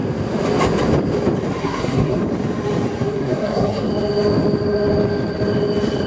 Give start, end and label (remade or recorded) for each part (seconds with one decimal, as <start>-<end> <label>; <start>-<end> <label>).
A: 0.0-1.6 recorded; 1.6-2.2 remade; 2.2-3.0 recorded; 3.0-3.9 remade; 3.9-6.1 recorded